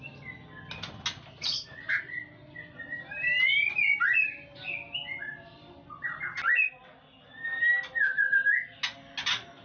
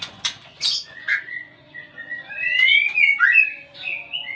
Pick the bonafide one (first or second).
first